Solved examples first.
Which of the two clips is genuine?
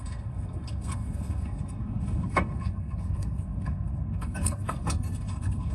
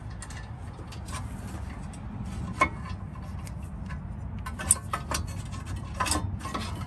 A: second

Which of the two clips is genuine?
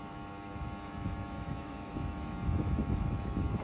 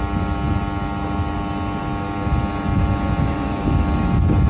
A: second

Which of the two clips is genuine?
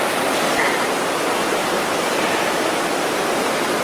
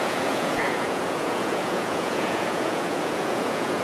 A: first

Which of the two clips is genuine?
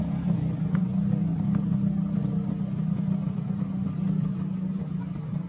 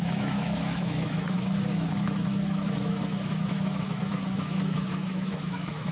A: first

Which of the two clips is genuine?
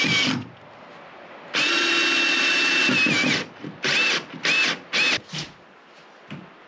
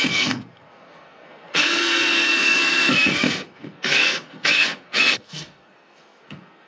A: first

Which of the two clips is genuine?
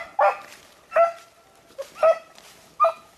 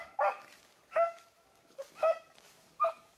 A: first